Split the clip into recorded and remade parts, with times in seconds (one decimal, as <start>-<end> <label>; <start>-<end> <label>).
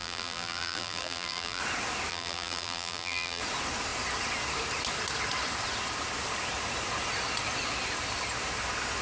0.0-1.6 remade; 1.6-2.1 recorded; 2.1-3.4 remade; 3.4-9.0 recorded